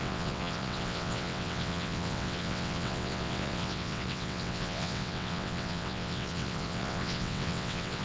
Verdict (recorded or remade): remade